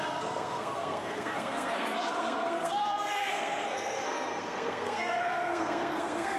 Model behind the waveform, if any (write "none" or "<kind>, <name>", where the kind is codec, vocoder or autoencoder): codec, SNAC